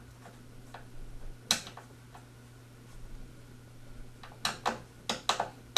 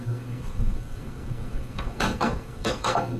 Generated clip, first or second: second